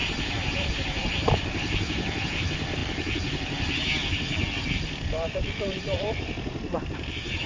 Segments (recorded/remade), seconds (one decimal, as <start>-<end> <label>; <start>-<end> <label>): 0.0-7.5 remade